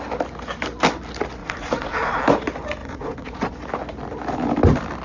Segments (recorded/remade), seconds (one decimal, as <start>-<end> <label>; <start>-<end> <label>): 0.0-1.4 recorded; 1.4-2.2 remade; 2.2-2.8 recorded; 2.8-3.5 remade; 3.5-5.0 recorded